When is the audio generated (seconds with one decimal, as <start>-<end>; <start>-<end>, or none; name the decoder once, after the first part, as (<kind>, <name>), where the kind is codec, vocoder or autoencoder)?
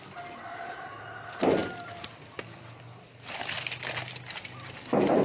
none